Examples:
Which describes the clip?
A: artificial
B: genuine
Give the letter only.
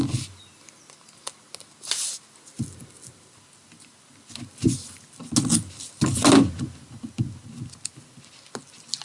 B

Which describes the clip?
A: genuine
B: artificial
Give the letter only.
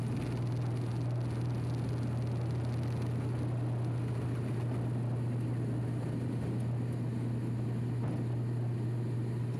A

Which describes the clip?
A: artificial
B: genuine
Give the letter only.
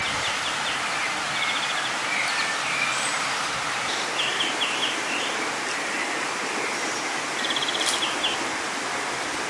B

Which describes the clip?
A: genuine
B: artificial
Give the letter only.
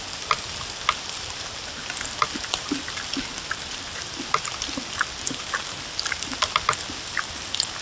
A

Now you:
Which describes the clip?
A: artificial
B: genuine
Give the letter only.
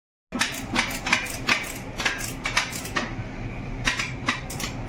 B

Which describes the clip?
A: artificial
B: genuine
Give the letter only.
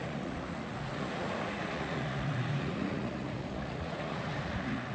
A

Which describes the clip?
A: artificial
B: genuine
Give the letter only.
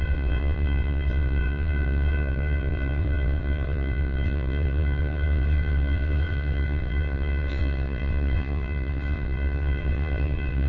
A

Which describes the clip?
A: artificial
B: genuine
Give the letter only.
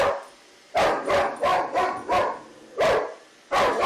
B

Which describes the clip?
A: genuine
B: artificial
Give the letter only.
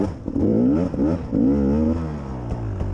A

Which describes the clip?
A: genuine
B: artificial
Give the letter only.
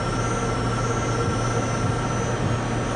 A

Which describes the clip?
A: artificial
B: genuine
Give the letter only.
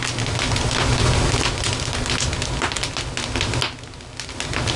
B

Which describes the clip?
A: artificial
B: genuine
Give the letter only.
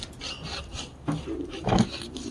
A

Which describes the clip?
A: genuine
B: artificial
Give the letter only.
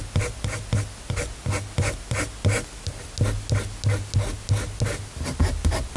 A